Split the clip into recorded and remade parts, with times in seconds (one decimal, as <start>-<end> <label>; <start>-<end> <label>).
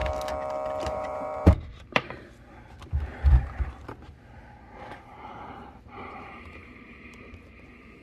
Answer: 0.0-0.8 recorded; 0.8-1.7 remade; 1.7-4.7 recorded; 4.7-8.0 remade